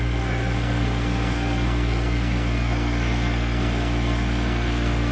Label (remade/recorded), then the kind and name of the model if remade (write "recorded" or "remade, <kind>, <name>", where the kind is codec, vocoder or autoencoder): remade, codec, SNAC